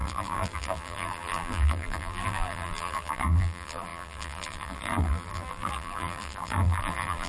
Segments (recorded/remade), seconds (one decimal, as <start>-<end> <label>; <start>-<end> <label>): 0.0-7.3 remade